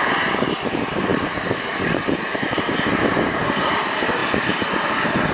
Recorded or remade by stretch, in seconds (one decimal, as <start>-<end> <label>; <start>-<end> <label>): 0.0-1.1 recorded; 1.1-3.7 remade; 3.7-5.3 recorded